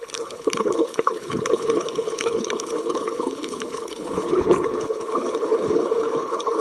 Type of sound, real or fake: fake